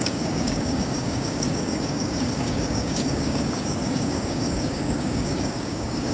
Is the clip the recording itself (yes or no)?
no